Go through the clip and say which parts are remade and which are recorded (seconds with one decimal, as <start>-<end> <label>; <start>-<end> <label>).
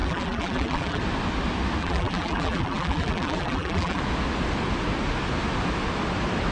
0.0-1.0 remade; 1.0-1.8 recorded; 1.8-4.0 remade; 4.0-6.5 recorded